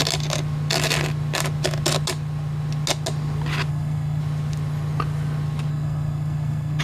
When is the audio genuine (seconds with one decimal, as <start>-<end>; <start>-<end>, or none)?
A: 0.0-3.7; 4.2-5.7